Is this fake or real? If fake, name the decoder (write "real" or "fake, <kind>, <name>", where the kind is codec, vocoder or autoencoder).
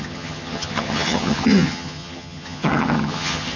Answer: fake, vocoder, HiFi-GAN